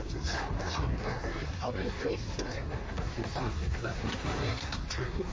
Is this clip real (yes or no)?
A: no